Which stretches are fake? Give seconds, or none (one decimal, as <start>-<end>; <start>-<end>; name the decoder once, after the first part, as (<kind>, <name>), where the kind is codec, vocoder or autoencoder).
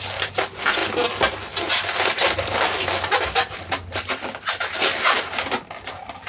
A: none